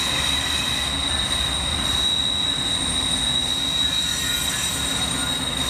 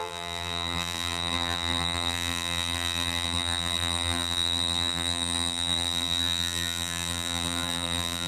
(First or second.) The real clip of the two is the first